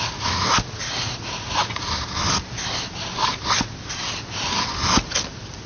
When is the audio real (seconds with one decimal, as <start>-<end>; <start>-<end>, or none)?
0.0-0.8; 1.8-5.7